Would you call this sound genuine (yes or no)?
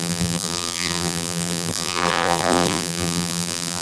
no